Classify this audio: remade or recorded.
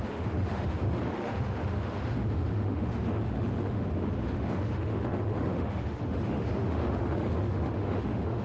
remade